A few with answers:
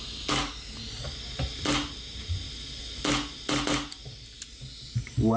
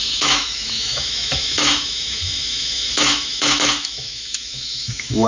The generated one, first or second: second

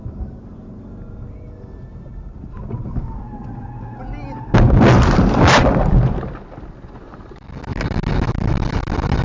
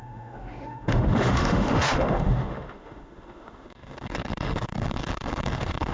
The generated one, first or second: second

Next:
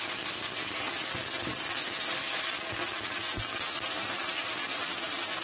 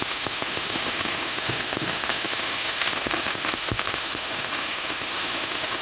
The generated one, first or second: second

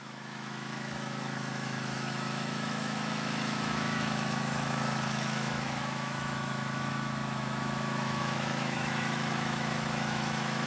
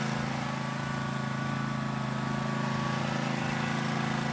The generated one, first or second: first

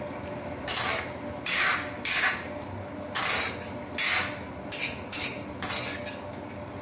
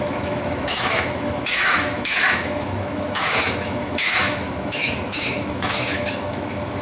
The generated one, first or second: second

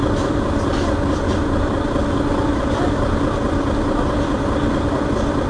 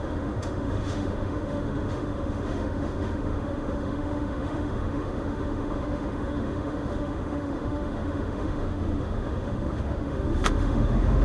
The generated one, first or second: second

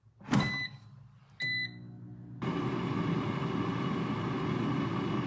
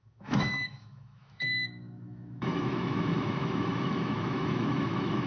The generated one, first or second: second